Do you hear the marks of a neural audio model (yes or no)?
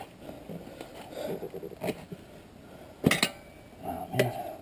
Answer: no